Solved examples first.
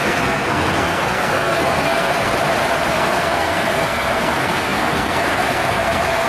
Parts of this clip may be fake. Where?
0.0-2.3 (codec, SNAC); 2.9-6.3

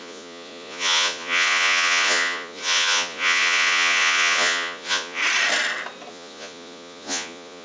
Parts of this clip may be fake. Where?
0.0-5.2 (vocoder, Vocos); 6.1-7.6

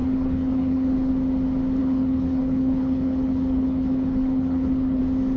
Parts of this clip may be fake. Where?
0.0-1.1 (codec, HILCodec); 1.8-5.0

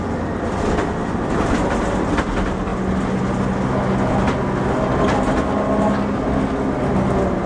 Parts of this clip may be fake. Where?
none

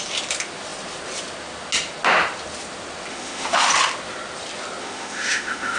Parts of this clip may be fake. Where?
3.1-3.7 (autoencoder, DAC-VAE); 4.8-5.8

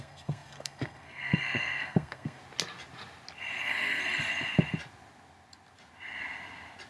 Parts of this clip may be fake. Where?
0.0-2.4 (codec, SNAC); 3.6-4.0

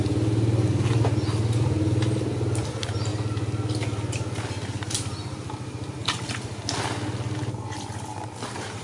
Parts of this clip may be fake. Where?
none